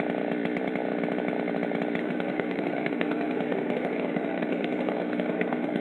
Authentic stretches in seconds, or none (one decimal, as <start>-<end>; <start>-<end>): 0.0-2.0